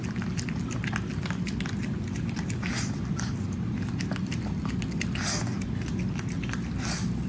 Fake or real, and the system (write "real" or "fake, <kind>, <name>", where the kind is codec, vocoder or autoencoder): real